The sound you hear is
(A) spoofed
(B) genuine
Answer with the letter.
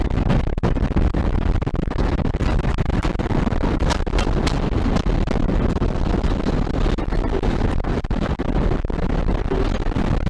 B